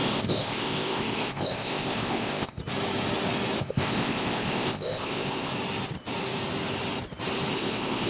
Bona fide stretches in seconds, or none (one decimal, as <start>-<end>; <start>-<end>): 2.6-3.6; 5.5-7.5